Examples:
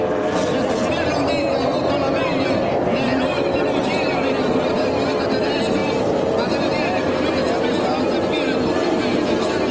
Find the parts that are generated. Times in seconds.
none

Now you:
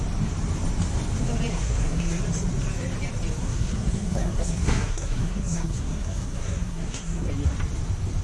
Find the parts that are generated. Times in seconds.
1.5-2.2 (codec, SNAC); 3.4-7.3

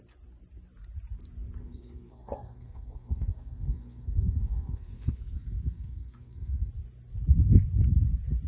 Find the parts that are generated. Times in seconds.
1.6-6.7 (codec, SNAC)

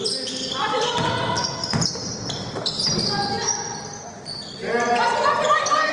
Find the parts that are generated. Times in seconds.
none

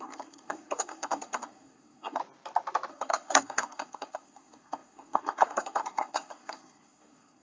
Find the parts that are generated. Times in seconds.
0.0-2.2 (codec, SNAC); 2.9-7.4